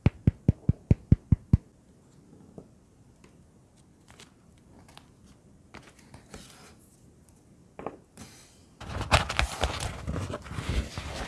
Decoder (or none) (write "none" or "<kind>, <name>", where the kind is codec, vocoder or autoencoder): none